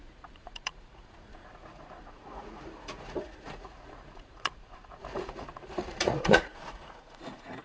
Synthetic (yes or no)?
yes